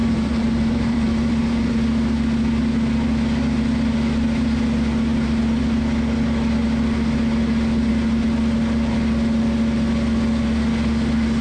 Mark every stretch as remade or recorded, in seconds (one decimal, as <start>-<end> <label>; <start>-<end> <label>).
0.0-1.7 remade; 1.7-11.4 recorded

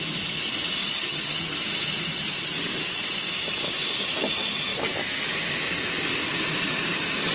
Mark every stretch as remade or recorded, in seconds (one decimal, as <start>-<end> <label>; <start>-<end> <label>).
0.0-0.8 recorded; 0.8-1.6 remade; 1.6-7.3 recorded

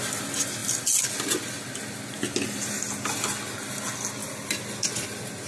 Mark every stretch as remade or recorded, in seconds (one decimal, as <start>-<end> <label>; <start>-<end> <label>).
0.0-5.5 recorded

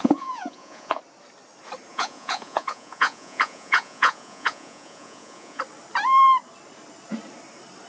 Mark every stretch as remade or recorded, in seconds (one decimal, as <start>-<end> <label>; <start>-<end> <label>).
0.0-1.0 remade; 1.0-1.9 recorded; 1.9-5.6 remade; 5.6-7.9 recorded